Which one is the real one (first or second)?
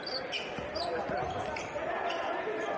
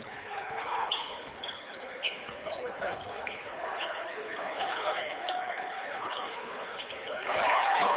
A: first